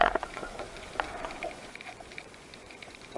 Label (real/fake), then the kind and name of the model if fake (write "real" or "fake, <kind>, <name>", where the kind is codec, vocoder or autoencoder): fake, vocoder, Vocos